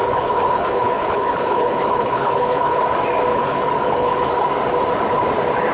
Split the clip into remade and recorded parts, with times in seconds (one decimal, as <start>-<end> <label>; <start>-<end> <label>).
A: 0.0-2.8 remade; 2.8-3.3 recorded; 3.3-4.3 remade; 4.3-5.7 recorded